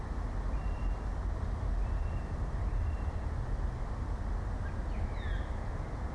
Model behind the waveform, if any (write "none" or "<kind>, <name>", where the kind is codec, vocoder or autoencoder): none